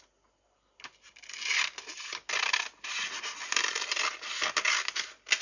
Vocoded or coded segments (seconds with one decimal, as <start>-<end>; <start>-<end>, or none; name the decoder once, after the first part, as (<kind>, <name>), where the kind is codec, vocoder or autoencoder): none